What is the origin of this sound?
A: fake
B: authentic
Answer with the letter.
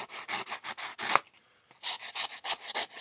B